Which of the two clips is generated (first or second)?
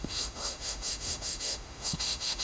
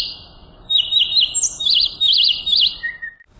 first